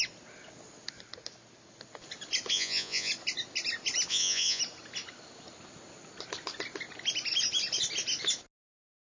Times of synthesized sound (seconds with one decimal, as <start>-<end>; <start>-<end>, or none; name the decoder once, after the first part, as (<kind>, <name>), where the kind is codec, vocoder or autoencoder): 2.5-3.1 (vocoder, Vocos); 4.1-4.6